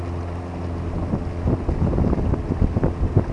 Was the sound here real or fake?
real